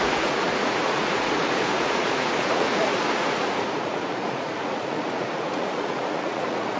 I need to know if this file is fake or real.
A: fake